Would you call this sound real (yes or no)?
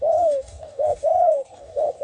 no